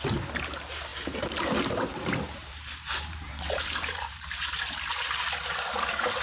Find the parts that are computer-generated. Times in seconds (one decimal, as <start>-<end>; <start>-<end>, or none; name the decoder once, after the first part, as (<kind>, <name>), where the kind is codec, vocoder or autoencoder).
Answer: 0.9-4.6 (vocoder, BigVGAN v2)